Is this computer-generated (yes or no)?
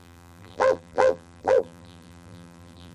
yes